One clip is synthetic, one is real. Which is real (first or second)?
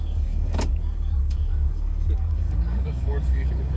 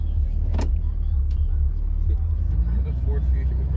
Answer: second